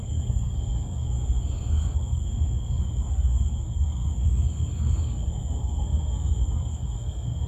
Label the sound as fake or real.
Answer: fake